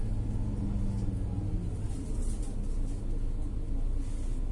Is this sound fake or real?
real